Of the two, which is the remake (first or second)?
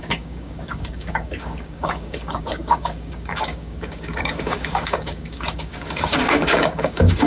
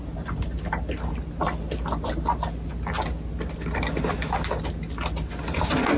first